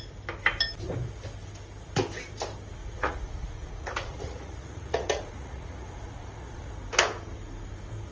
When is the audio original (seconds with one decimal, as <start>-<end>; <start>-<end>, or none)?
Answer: 0.0-2.8; 6.7-8.1